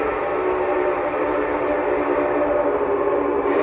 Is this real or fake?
real